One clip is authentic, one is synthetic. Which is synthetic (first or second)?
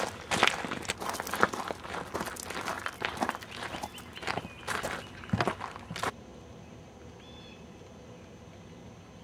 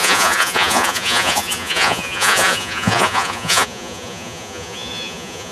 second